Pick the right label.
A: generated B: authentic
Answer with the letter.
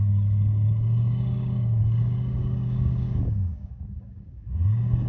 A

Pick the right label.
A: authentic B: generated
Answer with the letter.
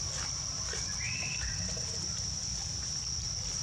A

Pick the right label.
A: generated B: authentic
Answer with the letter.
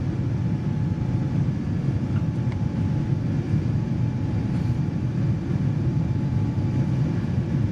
A